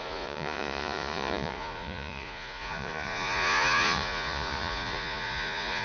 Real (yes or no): no